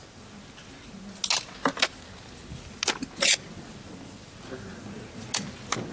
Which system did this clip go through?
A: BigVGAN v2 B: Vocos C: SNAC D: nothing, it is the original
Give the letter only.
D